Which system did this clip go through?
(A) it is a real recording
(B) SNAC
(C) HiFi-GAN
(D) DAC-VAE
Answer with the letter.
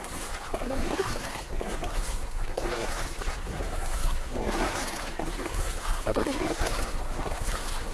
B